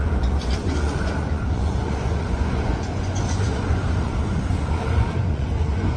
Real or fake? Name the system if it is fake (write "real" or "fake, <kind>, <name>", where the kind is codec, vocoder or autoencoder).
fake, vocoder, Vocos